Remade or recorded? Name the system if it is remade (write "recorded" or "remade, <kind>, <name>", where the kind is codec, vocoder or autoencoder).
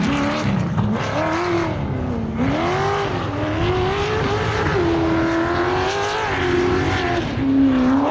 recorded